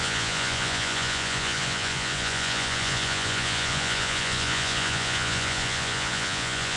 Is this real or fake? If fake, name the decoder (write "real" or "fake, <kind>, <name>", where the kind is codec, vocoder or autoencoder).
fake, vocoder, Vocos